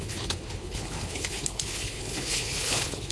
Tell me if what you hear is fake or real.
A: fake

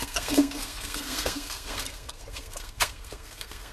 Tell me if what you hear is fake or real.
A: fake